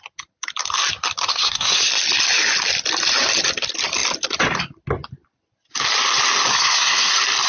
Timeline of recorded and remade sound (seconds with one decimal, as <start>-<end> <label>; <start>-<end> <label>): 0.0-1.3 recorded; 1.3-1.9 remade; 1.9-6.5 recorded; 6.5-7.1 remade; 7.1-7.5 recorded